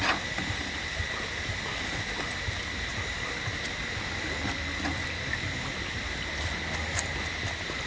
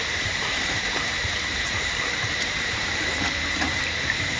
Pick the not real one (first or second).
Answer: second